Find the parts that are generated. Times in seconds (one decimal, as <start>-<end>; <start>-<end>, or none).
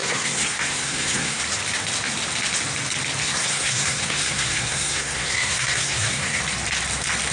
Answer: 0.0-1.4; 3.2-6.4